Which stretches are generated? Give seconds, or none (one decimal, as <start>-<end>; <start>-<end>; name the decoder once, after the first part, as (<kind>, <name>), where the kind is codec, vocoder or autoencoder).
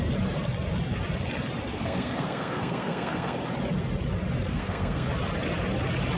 1.7-3.4 (codec, SNAC); 4.5-5.1